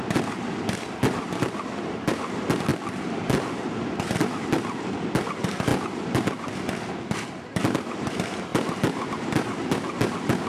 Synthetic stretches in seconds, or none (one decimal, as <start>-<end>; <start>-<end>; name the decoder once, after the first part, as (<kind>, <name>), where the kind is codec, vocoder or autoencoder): 0.0-5.7 (vocoder, BigVGAN v2); 6.9-10.5